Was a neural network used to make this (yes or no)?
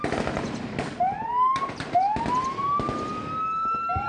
no